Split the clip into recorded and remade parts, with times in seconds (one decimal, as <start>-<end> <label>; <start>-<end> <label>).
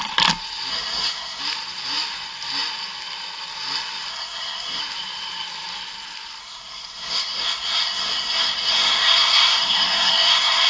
0.0-0.7 recorded; 0.7-1.4 remade; 1.4-4.1 recorded; 4.1-4.8 remade; 4.8-6.4 recorded; 6.4-10.7 remade